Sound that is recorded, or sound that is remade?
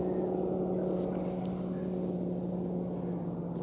recorded